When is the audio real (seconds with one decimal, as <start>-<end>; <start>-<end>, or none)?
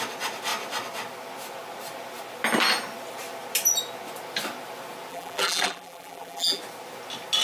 0.0-5.1; 6.6-7.4